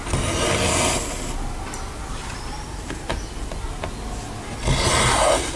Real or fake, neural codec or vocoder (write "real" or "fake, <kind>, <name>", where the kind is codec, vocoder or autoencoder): real